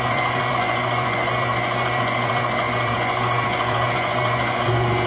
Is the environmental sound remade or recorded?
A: remade